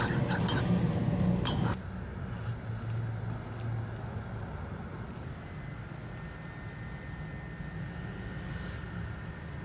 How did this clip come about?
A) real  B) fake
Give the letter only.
A